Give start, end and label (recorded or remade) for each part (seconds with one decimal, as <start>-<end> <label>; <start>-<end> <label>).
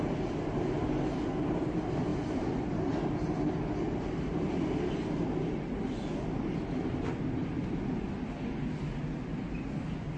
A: 0.0-10.2 recorded